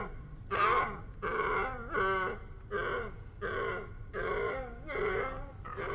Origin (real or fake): real